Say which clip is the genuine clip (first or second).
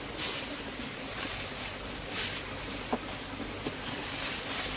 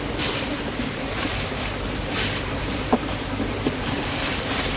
first